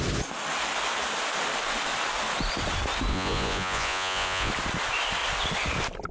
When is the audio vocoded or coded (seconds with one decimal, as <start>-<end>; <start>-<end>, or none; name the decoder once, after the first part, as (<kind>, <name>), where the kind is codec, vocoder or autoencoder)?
3.1-4.5 (vocoder, Vocos)